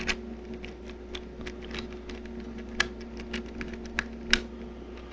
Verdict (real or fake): real